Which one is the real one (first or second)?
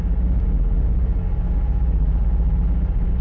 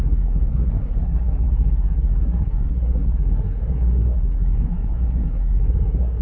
first